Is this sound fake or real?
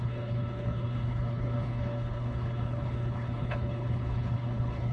fake